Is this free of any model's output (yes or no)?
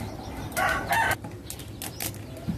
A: yes